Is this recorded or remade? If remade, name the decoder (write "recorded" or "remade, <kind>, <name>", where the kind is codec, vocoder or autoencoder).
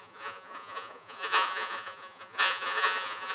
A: remade, vocoder, Vocos